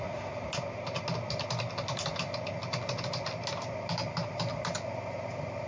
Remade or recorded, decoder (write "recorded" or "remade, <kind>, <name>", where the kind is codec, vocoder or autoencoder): recorded